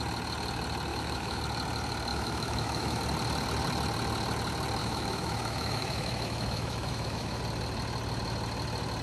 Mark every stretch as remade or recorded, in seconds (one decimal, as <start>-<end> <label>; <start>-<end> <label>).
0.0-0.9 recorded; 0.9-1.4 remade; 1.4-2.1 recorded; 2.1-3.0 remade; 3.0-4.8 recorded; 4.8-7.4 remade; 7.4-9.0 recorded